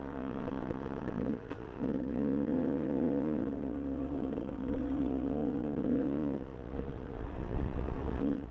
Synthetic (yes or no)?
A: yes